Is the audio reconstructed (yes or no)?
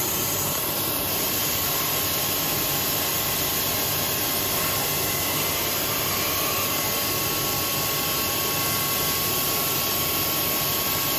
no